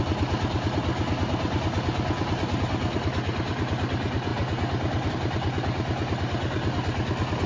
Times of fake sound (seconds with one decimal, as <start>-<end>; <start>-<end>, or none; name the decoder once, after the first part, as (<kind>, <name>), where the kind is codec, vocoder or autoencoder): none